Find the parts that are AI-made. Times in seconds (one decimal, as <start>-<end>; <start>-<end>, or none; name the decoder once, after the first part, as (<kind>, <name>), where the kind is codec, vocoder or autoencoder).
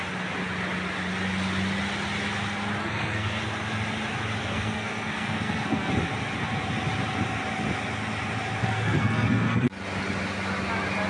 2.8-3.4 (codec, SNAC); 4.4-5.9; 8.6-9.7